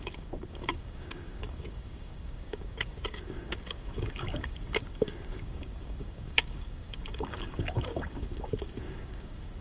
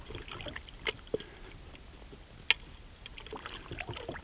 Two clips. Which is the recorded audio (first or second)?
second